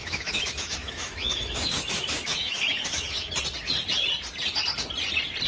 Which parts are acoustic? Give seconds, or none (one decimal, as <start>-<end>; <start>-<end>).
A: 3.3-5.5